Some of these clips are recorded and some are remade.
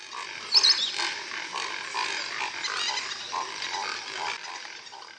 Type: recorded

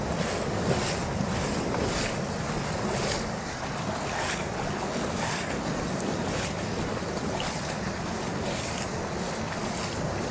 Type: recorded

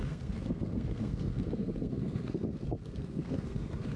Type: remade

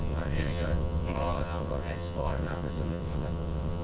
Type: remade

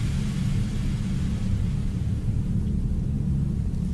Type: recorded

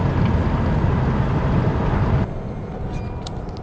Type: recorded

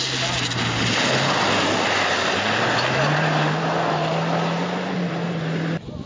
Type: recorded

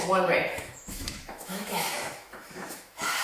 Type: remade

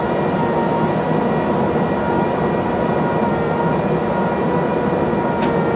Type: recorded